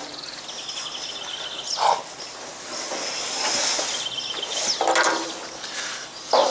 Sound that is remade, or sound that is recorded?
recorded